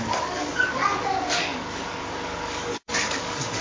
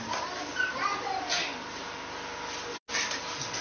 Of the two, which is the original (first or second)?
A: second